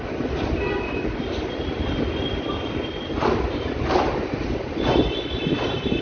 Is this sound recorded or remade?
recorded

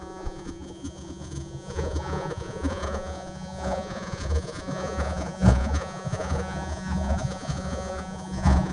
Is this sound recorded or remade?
remade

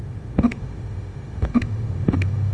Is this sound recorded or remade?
remade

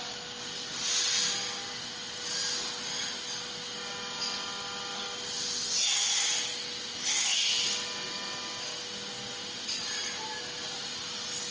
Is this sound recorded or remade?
recorded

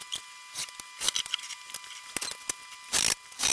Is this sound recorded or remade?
recorded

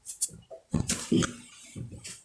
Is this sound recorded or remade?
remade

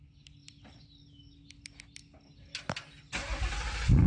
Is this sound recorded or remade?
recorded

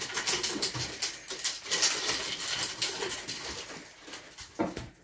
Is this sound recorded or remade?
recorded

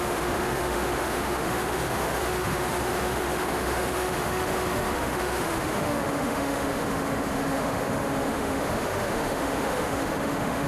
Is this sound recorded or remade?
remade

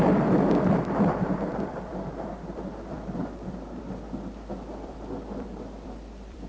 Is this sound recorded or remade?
remade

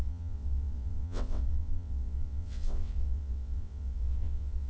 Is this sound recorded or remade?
remade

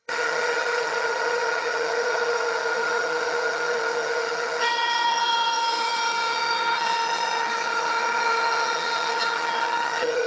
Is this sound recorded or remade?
remade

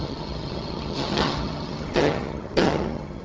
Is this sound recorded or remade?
remade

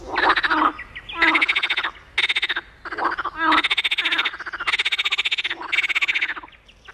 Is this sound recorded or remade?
recorded